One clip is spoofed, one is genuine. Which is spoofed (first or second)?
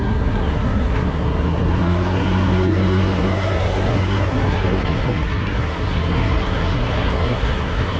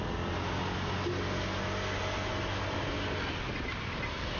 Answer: first